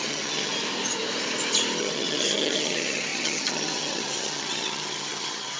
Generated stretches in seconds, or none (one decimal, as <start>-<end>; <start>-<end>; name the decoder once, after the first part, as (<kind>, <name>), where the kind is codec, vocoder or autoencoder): 0.0-0.5 (vocoder, HiFi-GAN); 1.8-5.6